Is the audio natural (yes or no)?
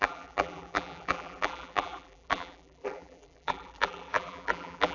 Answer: no